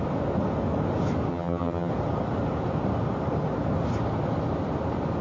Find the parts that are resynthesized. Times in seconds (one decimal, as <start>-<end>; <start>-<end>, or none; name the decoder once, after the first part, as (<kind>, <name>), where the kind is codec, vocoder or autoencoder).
1.3-1.9 (vocoder, HiFi-GAN)